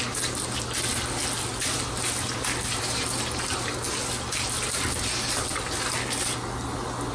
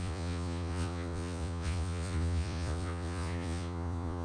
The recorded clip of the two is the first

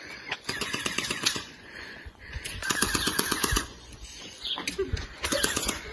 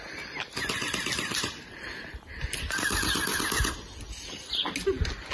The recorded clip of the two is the second